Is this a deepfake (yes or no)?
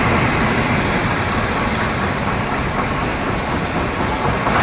no